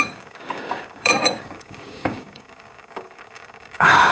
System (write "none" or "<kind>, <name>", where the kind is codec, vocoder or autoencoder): codec, DAC